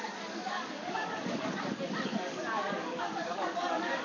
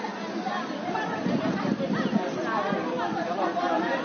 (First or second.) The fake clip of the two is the first